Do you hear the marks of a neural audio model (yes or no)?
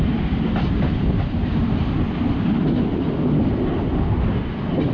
no